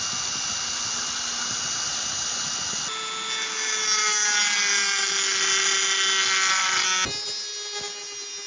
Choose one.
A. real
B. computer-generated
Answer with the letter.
A